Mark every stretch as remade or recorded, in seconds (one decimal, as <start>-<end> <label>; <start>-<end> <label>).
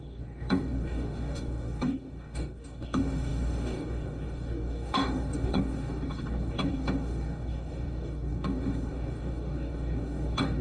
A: 0.0-10.6 remade